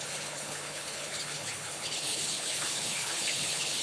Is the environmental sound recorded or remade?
remade